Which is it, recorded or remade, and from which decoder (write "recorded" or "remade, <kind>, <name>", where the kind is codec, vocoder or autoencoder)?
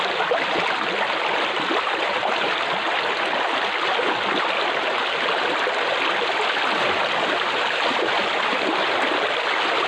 recorded